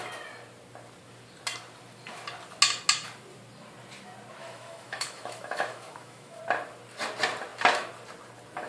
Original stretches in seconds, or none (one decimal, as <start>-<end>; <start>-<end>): 0.0-4.4; 6.4-8.7

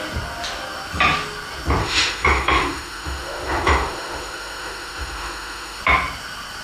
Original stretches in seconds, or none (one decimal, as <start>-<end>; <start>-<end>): 0.0-1.8; 5.8-6.6

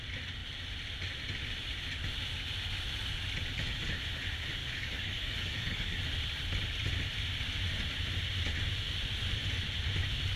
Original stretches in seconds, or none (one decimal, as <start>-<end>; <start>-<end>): 0.0-4.6; 6.0-10.4

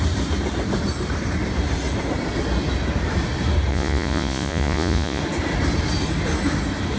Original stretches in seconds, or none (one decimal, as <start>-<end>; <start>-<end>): 0.0-3.7; 5.2-7.0

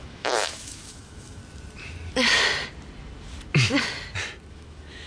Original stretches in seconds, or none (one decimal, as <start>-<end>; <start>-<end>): 1.4-4.5

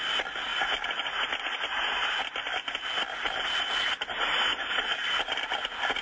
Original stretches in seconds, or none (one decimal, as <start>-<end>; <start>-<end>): 0.0-6.0